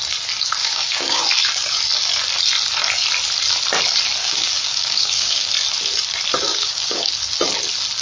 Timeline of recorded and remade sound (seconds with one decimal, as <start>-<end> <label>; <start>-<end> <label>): 0.0-0.6 recorded; 0.6-1.2 remade; 1.2-4.2 recorded; 4.2-5.5 remade; 5.5-6.5 recorded; 6.5-7.1 remade; 7.1-8.0 recorded